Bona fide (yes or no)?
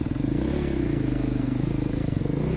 no